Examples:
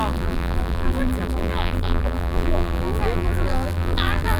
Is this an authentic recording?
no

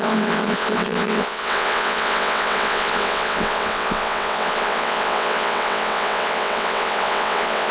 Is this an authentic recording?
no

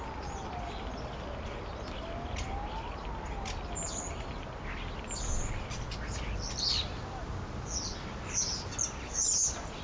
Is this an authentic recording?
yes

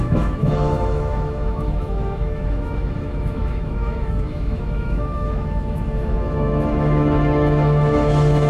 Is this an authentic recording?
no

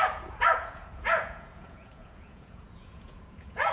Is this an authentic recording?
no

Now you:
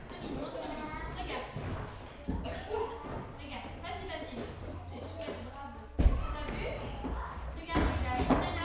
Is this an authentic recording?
yes